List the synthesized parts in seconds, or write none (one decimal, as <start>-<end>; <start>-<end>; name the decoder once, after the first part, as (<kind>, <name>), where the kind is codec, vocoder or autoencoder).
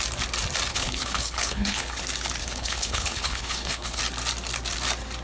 0.7-2.0 (codec, HILCodec); 2.4-4.0